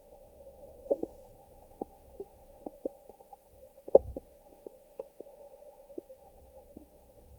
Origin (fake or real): fake